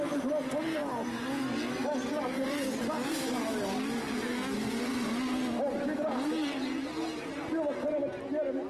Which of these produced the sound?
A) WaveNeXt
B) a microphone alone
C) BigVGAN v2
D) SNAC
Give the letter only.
B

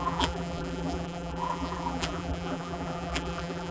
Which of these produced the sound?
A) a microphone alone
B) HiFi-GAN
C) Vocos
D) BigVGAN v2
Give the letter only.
D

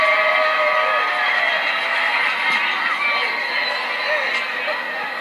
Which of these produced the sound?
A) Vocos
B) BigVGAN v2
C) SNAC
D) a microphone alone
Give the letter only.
D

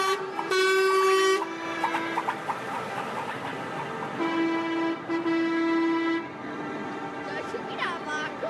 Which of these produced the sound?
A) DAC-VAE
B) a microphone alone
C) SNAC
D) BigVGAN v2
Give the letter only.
B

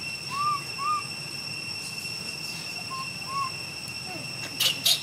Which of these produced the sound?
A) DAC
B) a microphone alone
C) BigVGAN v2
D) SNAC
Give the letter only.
B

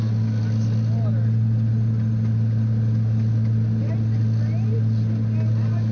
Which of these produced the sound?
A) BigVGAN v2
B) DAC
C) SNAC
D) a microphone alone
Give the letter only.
D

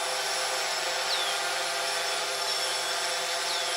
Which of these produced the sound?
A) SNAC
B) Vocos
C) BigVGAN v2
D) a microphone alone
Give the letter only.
D